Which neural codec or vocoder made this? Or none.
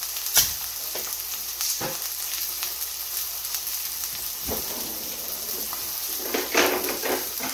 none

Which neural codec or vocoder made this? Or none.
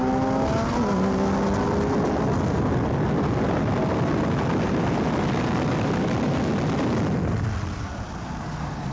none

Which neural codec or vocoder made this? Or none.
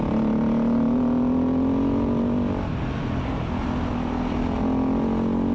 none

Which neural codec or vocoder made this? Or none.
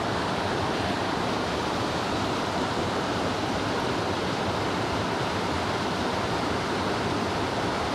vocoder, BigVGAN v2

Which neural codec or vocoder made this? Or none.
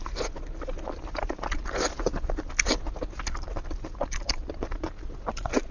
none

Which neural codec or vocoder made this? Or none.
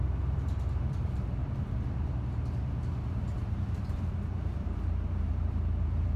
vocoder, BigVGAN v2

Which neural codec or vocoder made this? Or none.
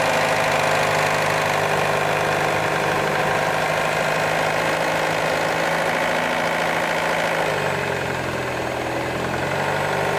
none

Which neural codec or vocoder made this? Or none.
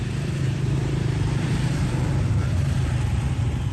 vocoder, BigVGAN v2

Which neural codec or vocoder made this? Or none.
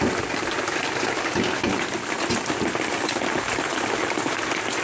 none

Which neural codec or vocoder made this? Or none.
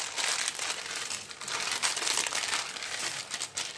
none